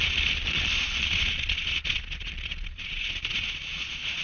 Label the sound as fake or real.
fake